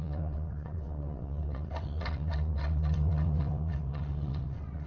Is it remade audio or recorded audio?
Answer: remade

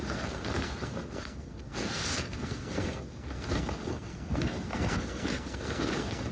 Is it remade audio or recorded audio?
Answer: remade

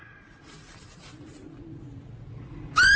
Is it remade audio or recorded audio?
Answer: recorded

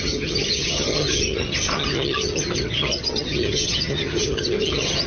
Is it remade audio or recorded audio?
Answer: remade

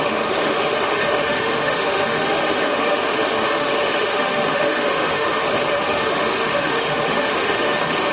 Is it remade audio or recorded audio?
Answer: remade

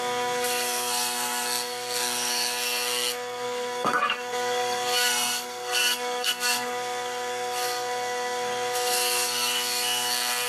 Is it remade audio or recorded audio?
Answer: remade